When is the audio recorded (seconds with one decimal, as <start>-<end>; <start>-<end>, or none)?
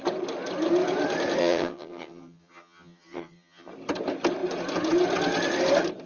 0.0-1.4; 3.7-6.1